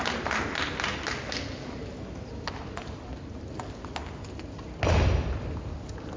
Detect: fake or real real